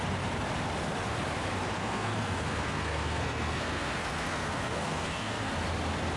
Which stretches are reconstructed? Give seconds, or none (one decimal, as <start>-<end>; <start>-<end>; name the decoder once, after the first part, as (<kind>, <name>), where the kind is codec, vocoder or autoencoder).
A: 1.8-5.5 (codec, SNAC)